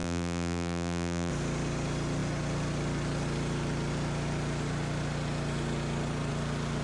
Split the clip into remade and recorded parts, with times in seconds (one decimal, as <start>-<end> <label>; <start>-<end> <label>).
0.0-1.3 remade; 1.3-6.8 recorded